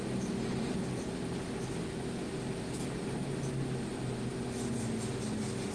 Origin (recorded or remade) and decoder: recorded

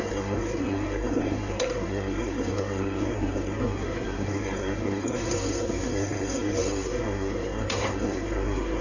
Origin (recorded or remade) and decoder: remade, codec, SNAC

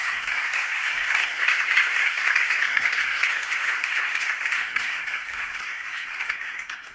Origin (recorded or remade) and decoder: remade, codec, SNAC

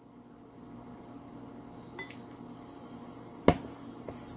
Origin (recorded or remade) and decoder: recorded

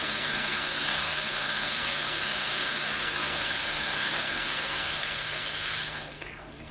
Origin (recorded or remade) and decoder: remade, codec, SNAC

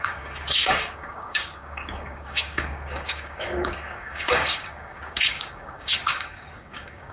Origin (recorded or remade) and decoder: remade, codec, DAC